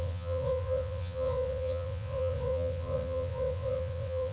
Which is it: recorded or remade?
remade